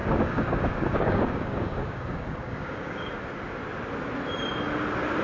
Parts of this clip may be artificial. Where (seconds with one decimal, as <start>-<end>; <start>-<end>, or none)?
0.0-3.1